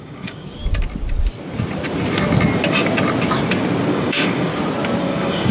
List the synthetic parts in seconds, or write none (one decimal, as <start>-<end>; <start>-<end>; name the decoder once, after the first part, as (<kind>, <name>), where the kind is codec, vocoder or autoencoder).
0.0-0.6 (codec, DAC); 3.9-4.5; 5.0-5.5